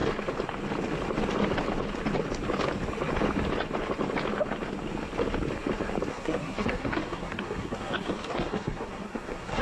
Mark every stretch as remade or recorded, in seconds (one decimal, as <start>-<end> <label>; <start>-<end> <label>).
0.0-6.1 recorded; 6.1-9.6 remade

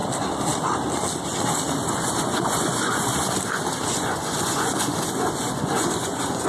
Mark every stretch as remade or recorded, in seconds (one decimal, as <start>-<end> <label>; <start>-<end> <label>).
0.0-1.9 recorded; 1.9-3.1 remade; 3.1-3.9 recorded; 3.9-6.5 remade

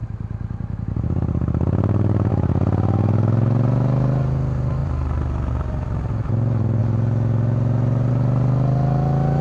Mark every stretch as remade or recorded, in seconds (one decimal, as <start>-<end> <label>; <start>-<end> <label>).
0.0-4.8 recorded; 4.8-6.1 remade; 6.1-9.4 recorded

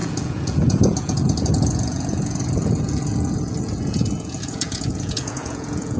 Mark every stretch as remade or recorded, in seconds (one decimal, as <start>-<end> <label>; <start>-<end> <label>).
0.0-6.0 remade